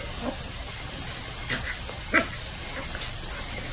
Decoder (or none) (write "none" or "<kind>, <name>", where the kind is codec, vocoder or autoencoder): none